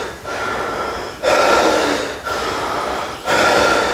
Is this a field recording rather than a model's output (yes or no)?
yes